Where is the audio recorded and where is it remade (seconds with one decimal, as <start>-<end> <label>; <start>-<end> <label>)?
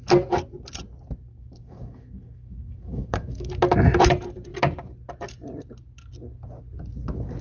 0.0-1.3 recorded; 1.3-3.5 remade; 3.5-7.4 recorded